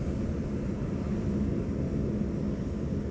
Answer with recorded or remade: recorded